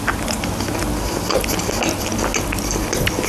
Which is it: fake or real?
real